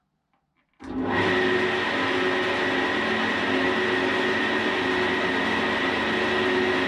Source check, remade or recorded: recorded